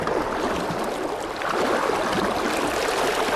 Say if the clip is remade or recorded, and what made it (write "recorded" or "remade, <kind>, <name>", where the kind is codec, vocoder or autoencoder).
recorded